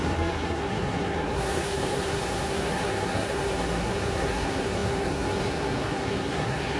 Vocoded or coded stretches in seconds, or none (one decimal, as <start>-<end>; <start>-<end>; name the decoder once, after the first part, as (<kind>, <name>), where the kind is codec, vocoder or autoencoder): 0.0-6.8 (codec, SNAC)